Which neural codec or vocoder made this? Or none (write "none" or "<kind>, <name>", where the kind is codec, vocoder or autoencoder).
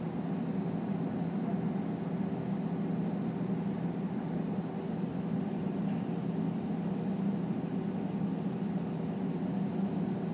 none